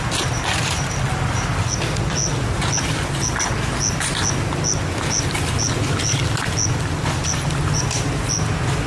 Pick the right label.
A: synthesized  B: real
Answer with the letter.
B